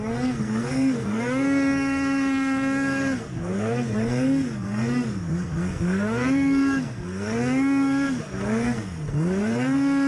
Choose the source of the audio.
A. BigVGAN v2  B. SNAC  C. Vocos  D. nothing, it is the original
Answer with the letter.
B